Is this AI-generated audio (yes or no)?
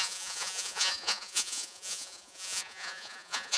yes